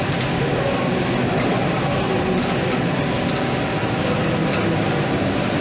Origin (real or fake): real